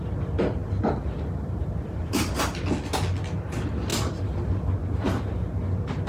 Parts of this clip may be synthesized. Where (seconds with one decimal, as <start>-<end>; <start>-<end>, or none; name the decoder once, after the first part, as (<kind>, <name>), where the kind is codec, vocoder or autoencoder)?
0.6-2.1 (vocoder, BigVGAN v2); 3.9-5.4